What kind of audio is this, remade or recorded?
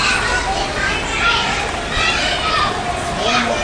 recorded